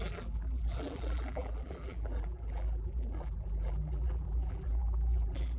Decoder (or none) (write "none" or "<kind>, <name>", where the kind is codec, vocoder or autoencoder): vocoder, BigVGAN v2